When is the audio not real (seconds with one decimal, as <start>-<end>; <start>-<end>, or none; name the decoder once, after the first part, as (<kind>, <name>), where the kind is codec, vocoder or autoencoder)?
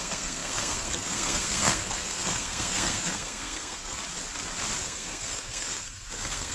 0.0-4.0 (codec, SNAC); 4.8-6.5